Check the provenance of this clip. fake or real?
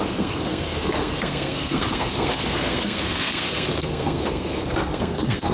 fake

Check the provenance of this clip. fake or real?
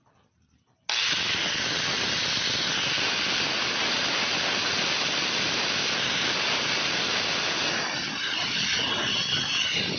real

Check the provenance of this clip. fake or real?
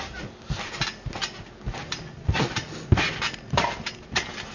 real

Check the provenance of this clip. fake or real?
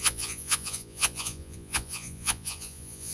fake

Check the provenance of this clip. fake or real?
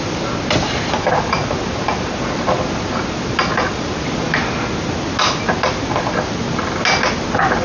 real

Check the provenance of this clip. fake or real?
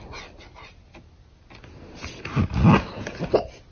real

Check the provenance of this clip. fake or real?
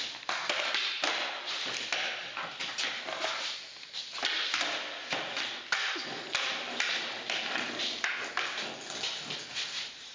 real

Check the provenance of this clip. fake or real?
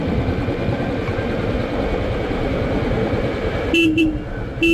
real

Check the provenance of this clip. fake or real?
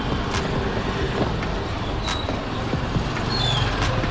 real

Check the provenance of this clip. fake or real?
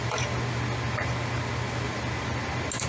real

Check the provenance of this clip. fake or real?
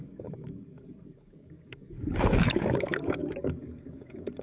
fake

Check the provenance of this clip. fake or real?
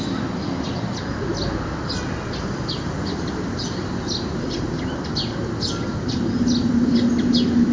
real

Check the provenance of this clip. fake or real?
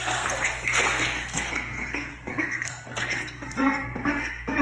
fake